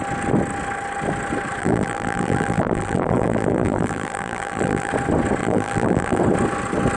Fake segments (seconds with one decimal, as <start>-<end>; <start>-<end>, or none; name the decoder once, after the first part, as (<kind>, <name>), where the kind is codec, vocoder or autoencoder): 1.6-4.9 (vocoder, BigVGAN v2); 5.4-6.2